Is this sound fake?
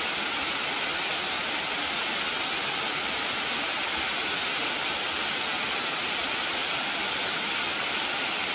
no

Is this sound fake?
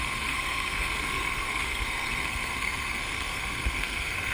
yes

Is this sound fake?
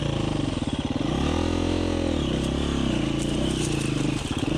no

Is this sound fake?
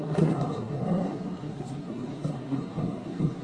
yes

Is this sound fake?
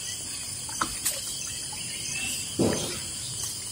yes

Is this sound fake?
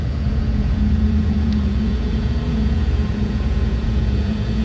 yes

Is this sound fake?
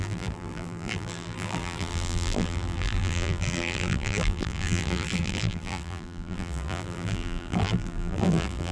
yes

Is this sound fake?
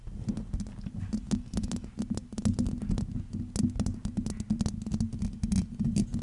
no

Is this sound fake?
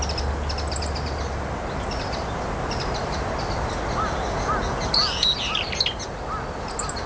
no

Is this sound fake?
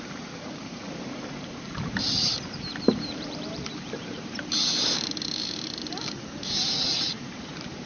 yes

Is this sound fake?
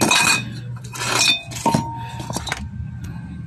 no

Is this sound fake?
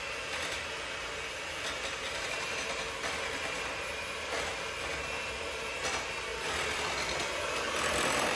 no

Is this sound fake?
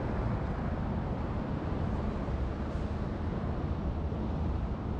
no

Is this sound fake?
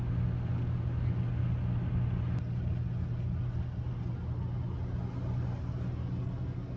no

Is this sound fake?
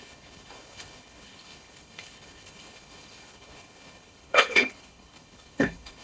yes